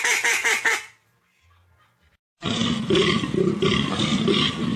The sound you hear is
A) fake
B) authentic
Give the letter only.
A